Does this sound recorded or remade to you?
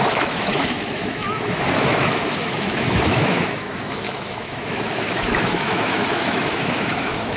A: remade